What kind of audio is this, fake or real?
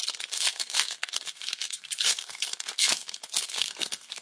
fake